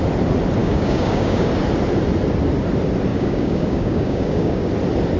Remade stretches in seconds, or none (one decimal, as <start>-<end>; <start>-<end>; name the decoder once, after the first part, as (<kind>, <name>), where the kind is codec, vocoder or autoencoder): 0.6-1.5 (codec, DAC); 3.1-4.7